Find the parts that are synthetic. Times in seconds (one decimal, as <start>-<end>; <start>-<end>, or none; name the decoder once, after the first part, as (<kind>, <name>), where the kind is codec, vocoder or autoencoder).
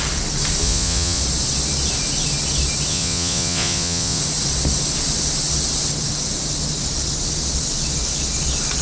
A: 0.6-1.2 (vocoder, Vocos); 2.9-4.2